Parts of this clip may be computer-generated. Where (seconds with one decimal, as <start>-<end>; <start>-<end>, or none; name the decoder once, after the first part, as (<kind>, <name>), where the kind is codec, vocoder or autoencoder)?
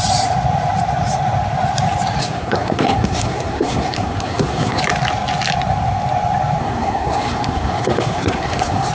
2.2-4.8 (codec, SNAC); 6.6-8.9